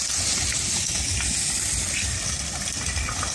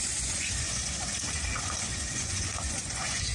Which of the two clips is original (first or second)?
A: first